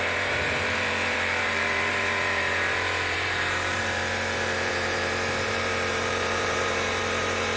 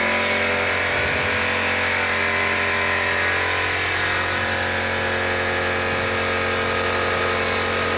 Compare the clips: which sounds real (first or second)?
second